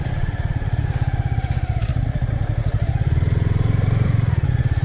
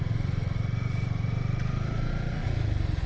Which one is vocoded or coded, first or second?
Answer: first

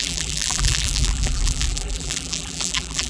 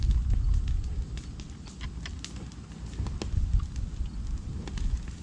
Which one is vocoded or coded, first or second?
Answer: first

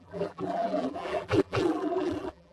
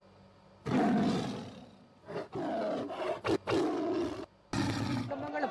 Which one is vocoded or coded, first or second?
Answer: first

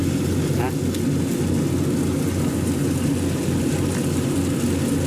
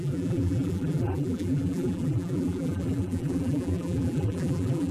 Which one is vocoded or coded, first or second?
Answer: second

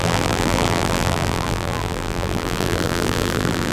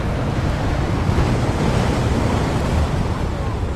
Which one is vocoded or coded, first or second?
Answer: first